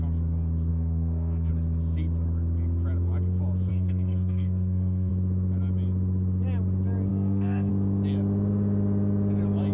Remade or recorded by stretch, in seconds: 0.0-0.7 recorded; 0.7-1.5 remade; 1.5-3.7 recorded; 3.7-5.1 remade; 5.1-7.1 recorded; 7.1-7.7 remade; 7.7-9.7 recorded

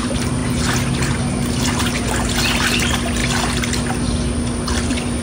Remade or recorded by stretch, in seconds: 0.0-5.2 recorded

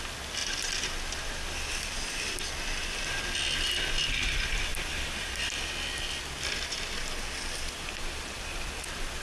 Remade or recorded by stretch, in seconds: 0.0-4.7 recorded; 4.7-5.4 remade; 5.4-9.2 recorded